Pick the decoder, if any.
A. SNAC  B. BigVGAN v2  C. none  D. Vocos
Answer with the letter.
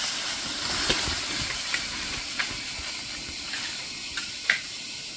C